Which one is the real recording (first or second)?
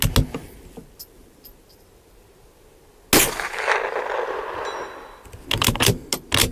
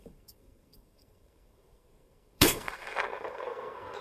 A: first